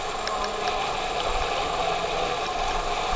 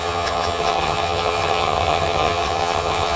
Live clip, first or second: first